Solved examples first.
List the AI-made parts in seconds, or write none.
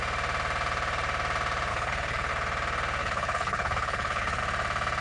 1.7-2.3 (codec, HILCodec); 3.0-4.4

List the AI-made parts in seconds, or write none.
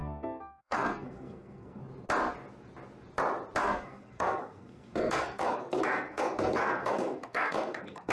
0.0-1.8 (codec, SNAC); 3.6-8.1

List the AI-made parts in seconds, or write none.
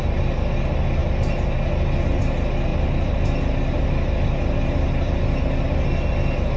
none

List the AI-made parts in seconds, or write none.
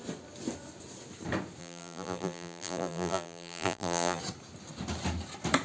1.6-4.2 (vocoder, BigVGAN v2)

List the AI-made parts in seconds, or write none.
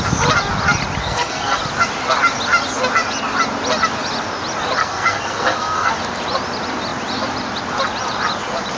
1.0-1.6 (codec, SNAC); 4.8-5.9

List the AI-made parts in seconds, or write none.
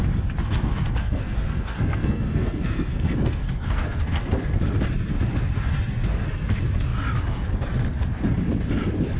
1.0-4.6 (codec, SNAC)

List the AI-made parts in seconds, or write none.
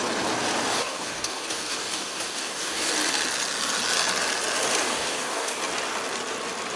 0.7-2.9 (codec, DAC); 4.8-5.6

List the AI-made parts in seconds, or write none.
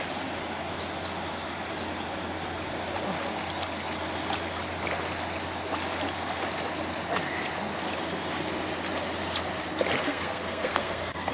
10.1-11.3 (codec, SNAC)